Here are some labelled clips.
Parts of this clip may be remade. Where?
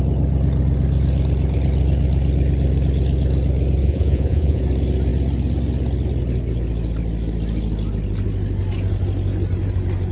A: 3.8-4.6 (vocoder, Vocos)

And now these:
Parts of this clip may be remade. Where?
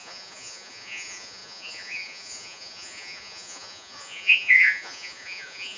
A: 0.0-5.8 (vocoder, Vocos)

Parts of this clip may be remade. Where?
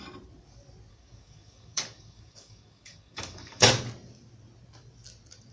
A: 0.9-3.7 (codec, DAC)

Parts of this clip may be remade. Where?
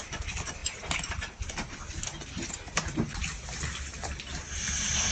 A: 0.0-0.6 (vocoder, BigVGAN v2); 1.4-3.2; 3.7-5.1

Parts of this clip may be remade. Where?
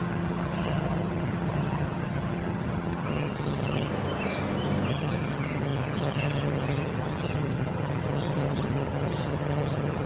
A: 0.0-3.9 (vocoder, HiFi-GAN); 4.9-10.1